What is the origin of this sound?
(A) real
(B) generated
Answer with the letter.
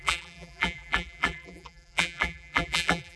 B